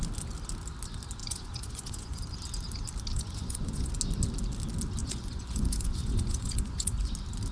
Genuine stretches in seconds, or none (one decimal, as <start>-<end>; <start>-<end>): 0.0-1.2; 2.2-3.1; 3.9-5.0; 7.1-7.5